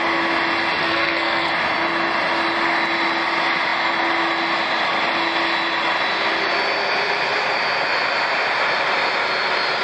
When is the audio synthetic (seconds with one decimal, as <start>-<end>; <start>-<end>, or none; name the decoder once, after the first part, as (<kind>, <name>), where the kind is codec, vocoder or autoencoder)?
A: 0.8-1.5 (codec, SNAC)